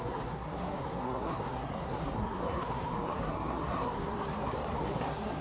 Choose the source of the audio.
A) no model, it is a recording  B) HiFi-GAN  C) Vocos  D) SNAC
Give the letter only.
D